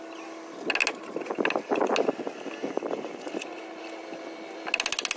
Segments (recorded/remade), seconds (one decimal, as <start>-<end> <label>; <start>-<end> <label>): 0.0-5.2 recorded

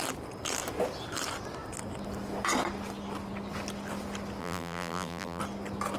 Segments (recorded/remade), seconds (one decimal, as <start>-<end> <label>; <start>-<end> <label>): 0.0-4.4 recorded; 4.4-5.4 remade; 5.4-6.0 recorded